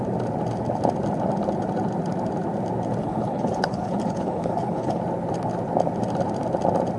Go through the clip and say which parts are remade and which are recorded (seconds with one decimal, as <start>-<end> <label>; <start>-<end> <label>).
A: 0.0-3.0 recorded; 3.0-5.0 remade; 5.0-7.0 recorded